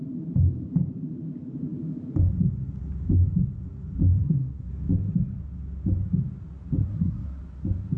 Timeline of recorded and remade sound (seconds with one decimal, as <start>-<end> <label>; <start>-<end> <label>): 0.0-4.2 recorded; 4.2-4.7 remade; 4.7-6.8 recorded; 6.8-7.4 remade; 7.4-8.0 recorded